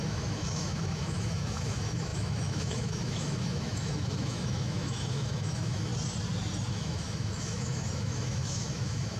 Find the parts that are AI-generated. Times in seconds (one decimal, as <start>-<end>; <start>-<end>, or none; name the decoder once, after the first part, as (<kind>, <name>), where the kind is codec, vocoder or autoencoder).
0.0-5.9 (autoencoder, DAC-VAE); 6.7-9.2